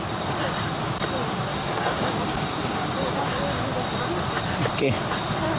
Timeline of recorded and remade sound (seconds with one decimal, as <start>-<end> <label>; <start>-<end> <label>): 0.0-1.5 recorded; 1.5-3.4 remade; 3.4-5.6 recorded